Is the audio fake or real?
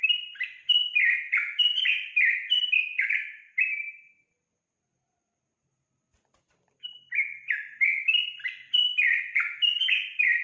real